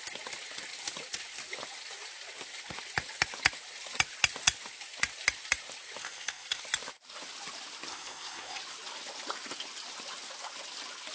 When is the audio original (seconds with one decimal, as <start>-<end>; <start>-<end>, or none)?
0.0-6.0; 6.6-7.9; 8.6-11.1